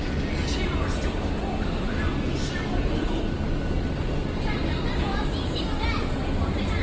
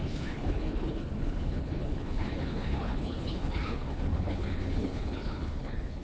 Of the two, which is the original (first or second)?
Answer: first